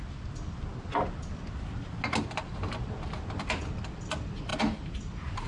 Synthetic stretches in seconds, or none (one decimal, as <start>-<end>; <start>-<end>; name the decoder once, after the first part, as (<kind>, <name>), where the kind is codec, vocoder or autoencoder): none